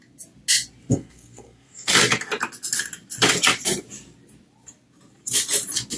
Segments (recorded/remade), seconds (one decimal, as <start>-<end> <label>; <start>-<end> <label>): 0.0-0.9 recorded; 0.9-1.9 remade; 1.9-6.0 recorded